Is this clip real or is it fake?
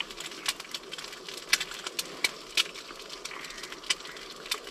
real